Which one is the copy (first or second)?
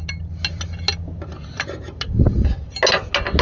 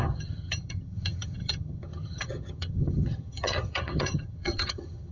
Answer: second